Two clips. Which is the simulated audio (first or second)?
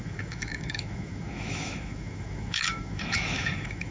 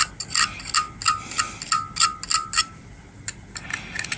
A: first